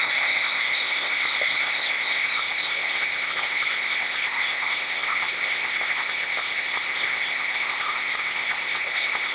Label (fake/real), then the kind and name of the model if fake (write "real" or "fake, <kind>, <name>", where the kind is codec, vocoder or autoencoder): fake, codec, ZipCodec